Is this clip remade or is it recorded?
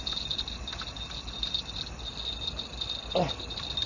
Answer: recorded